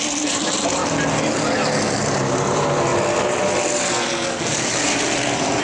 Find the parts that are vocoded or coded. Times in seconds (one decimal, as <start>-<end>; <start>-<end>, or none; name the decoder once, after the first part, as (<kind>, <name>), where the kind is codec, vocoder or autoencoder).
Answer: 0.0-0.8 (vocoder, BigVGAN v2); 2.0-2.9

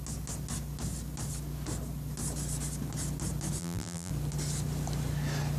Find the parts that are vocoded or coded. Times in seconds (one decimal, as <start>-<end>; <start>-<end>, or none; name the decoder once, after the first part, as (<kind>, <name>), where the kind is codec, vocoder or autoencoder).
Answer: 3.6-4.1 (vocoder, BigVGAN v2)

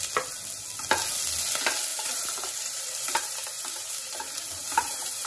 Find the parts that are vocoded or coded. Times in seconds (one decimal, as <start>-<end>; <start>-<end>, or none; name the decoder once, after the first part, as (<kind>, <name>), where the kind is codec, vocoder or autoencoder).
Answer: 1.9-5.3 (vocoder, BigVGAN v2)

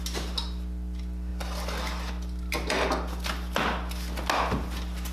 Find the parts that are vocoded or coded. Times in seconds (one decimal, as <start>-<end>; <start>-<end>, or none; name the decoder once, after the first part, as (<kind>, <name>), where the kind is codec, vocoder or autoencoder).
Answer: none

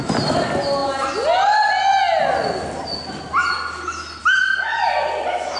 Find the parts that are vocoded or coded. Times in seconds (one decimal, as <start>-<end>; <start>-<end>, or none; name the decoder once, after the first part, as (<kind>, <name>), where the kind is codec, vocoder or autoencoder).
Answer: none

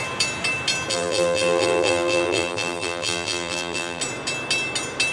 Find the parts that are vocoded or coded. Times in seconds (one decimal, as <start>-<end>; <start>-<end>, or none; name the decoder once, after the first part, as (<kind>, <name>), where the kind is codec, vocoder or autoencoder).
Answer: 0.9-4.0 (vocoder, BigVGAN v2)